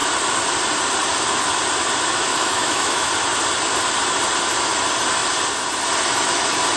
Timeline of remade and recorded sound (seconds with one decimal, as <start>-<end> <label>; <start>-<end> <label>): 0.0-2.3 recorded; 2.3-3.1 remade; 3.1-6.8 recorded